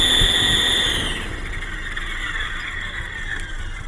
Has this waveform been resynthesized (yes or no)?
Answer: no